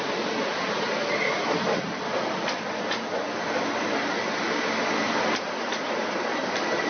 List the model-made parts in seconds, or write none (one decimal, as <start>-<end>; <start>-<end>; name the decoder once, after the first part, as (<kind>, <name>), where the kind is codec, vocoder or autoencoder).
6.4-6.9 (vocoder, BigVGAN v2)